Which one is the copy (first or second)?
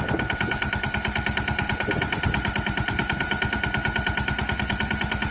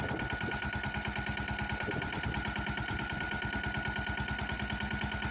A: first